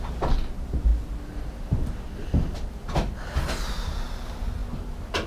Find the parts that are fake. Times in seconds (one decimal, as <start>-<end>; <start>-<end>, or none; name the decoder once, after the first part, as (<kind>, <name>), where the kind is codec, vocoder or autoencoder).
none